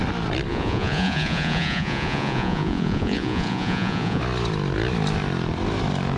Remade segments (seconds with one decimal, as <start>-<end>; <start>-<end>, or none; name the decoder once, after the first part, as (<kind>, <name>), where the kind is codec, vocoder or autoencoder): 0.5-4.2 (vocoder, Vocos)